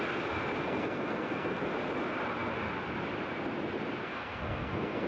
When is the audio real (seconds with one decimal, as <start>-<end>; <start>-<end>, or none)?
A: 0.0-0.6; 1.7-4.0